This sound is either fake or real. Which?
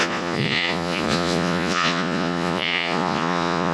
fake